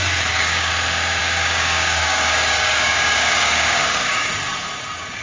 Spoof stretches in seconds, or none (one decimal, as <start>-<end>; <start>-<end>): 0.0-0.7; 1.2-4.3